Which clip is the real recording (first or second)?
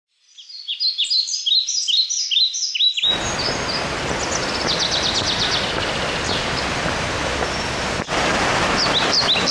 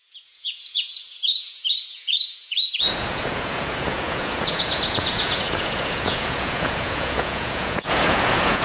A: first